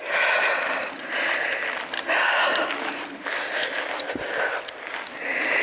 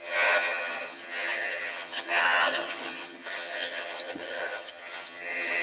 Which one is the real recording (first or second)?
first